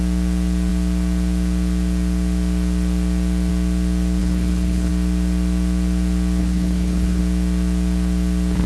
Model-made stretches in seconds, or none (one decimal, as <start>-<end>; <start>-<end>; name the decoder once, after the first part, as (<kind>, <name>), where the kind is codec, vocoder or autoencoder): 4.2-4.9 (codec, HILCodec); 6.4-7.2